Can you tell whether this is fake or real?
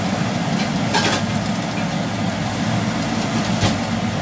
real